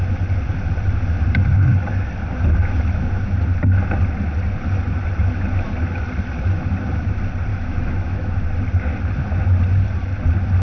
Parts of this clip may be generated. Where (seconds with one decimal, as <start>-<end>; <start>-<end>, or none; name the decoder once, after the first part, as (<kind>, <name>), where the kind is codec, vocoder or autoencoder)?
7.5-8.4 (autoencoder, DAC-VAE)